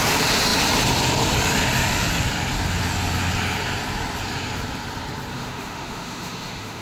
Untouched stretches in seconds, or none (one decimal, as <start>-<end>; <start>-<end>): 0.0-5.3